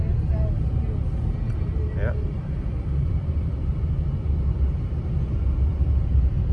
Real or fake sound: real